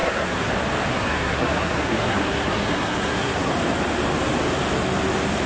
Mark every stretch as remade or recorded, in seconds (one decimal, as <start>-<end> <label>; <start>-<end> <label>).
0.0-0.5 remade; 0.5-0.9 recorded; 0.9-3.5 remade; 3.5-5.5 recorded